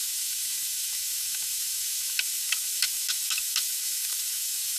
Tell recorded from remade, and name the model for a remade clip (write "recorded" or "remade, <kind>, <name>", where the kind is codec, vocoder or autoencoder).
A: remade, autoencoder, DAC-VAE